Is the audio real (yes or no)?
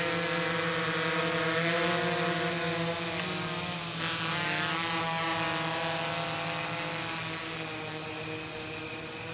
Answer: yes